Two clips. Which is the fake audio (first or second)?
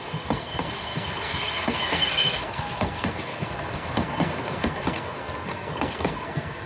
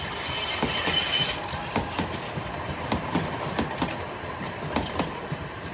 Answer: first